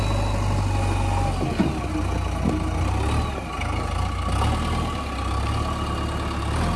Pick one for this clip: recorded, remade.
recorded